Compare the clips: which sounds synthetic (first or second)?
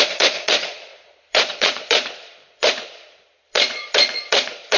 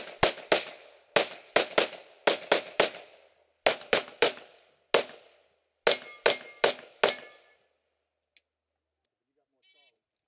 first